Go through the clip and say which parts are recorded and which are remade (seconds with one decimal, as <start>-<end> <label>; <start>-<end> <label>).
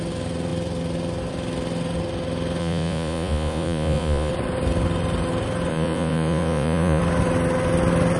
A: 0.0-2.6 recorded; 2.6-4.3 remade; 4.3-5.7 recorded; 5.7-7.0 remade; 7.0-8.2 recorded